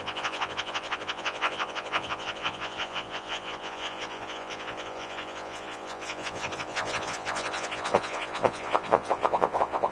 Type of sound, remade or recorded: remade